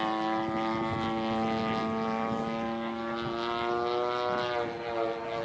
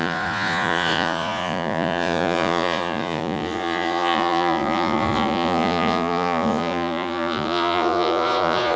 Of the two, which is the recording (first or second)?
first